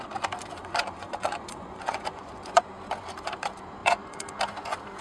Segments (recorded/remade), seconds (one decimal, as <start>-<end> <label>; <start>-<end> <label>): 0.0-0.6 recorded; 0.6-2.6 remade; 2.6-3.8 recorded; 3.8-4.4 remade; 4.4-5.0 recorded